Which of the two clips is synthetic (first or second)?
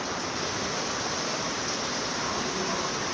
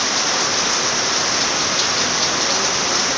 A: first